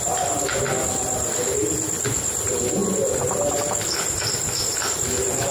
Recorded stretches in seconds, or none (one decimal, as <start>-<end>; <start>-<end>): 1.0-2.3